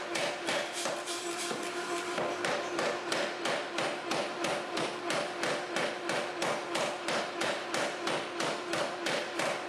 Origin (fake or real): real